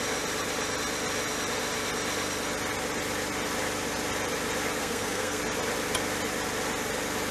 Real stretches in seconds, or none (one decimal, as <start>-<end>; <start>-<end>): 0.0-4.8; 5.4-7.3